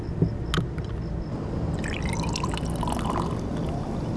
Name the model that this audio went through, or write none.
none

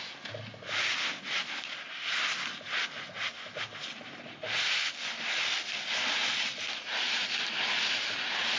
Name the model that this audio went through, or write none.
none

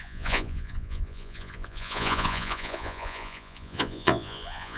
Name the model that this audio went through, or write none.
vocoder, Vocos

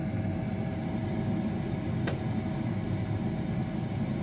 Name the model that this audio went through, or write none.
none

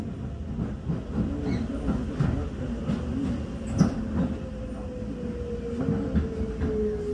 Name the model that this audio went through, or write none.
none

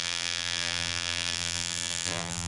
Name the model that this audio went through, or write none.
vocoder, BigVGAN v2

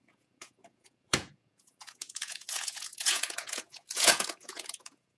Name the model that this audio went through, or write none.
vocoder, Vocos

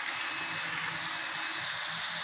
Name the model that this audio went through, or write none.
none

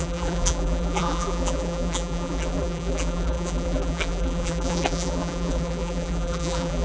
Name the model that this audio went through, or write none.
vocoder, BigVGAN v2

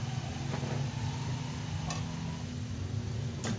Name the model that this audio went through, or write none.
none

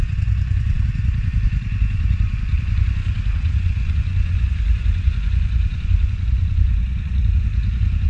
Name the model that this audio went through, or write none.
vocoder, Vocos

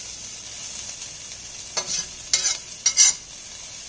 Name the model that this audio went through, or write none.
none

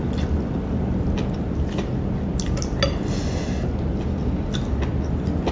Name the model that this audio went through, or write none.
none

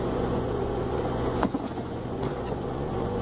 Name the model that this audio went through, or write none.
vocoder, Vocos